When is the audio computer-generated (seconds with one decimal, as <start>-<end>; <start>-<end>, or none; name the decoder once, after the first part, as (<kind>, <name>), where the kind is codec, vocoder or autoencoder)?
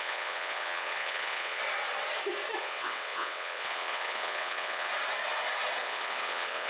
0.0-1.6 (vocoder, WaveNeXt); 2.6-4.9; 5.8-6.7